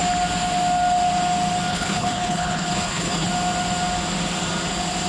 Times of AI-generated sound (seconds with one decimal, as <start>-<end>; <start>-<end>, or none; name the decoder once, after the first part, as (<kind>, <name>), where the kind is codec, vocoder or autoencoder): 1.7-3.3 (codec, HILCodec)

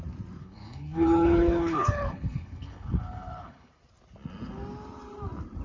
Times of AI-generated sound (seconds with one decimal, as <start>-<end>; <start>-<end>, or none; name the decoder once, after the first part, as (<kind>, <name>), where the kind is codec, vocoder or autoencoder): 0.4-3.7 (codec, HILCodec)

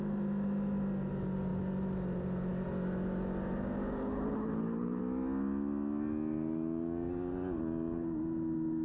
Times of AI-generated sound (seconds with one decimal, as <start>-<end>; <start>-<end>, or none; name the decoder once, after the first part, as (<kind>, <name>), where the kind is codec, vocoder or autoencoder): 4.0-5.0 (codec, HILCodec)

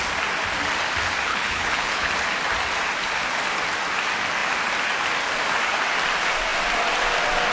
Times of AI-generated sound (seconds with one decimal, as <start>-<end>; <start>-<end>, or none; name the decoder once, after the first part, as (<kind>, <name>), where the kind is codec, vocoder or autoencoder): 1.3-2.1 (codec, HILCodec)

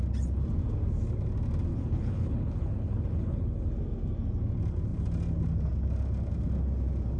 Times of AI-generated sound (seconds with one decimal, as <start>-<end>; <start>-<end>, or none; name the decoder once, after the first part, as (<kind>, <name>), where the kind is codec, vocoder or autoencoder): 1.7-3.7 (codec, HILCodec)

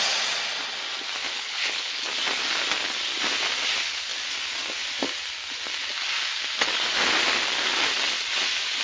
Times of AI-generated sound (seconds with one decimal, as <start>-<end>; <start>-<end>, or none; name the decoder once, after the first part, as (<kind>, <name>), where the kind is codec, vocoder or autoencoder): 1.2-2.1 (codec, HILCodec)